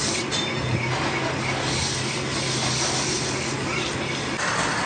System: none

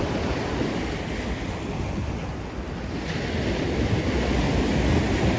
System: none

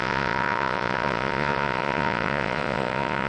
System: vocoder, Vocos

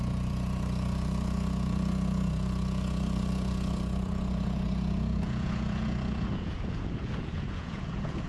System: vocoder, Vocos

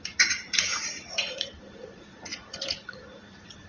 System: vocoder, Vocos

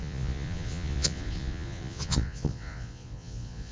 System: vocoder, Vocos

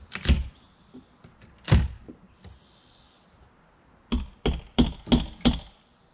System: none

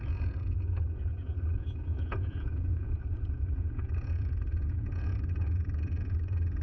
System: vocoder, Vocos